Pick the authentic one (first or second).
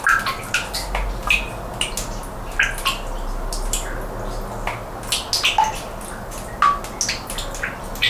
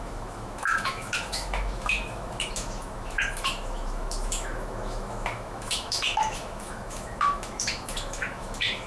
first